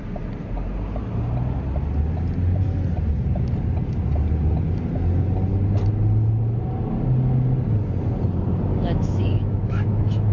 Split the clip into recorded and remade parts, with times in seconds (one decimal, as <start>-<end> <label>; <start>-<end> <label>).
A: 0.0-8.7 recorded; 8.7-10.3 remade